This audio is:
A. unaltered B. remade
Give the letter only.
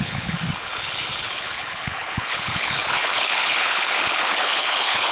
B